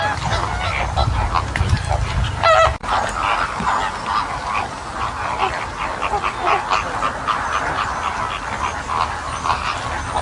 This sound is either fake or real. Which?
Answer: real